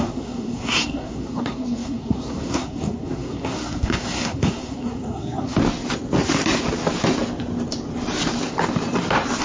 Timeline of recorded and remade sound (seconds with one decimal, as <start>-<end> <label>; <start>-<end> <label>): 0.0-5.6 remade; 5.6-9.4 recorded